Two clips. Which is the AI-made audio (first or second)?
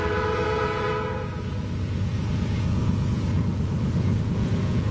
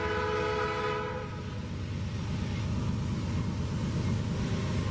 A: first